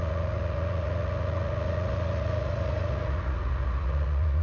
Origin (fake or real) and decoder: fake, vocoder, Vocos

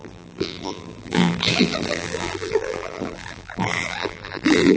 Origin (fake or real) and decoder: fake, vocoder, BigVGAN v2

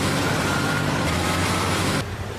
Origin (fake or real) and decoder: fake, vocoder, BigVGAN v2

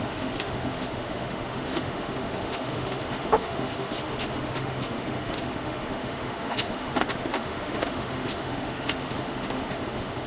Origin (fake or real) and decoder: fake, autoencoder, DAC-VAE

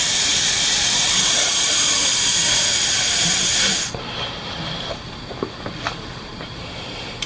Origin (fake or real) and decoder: fake, vocoder, BigVGAN v2